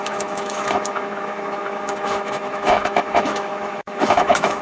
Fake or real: fake